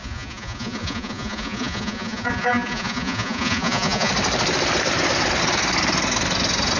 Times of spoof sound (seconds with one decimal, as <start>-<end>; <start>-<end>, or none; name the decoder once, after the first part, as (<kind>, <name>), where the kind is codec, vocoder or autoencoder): 0.0-4.1 (vocoder, Vocos)